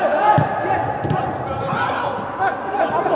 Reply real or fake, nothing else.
real